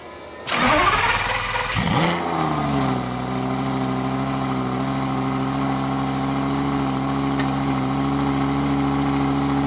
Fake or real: real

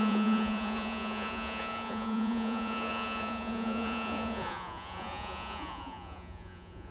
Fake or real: fake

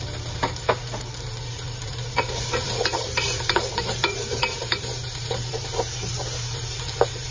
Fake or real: fake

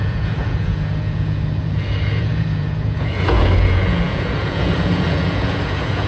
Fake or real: fake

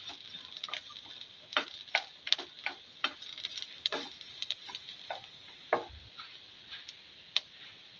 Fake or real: real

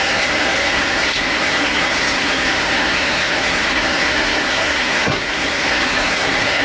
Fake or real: fake